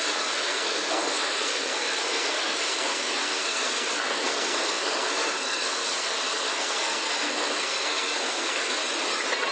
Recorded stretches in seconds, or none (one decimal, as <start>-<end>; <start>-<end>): 8.8-9.5